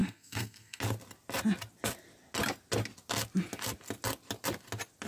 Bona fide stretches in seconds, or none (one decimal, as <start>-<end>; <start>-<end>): 0.8-5.1